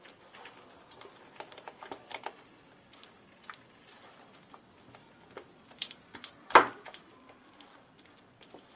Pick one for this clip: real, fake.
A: real